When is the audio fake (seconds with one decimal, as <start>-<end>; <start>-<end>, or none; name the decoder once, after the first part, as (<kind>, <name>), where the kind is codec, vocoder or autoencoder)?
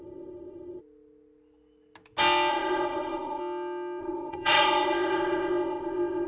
0.0-0.8 (codec, ZipCodec); 2.5-3.4; 4.0-6.3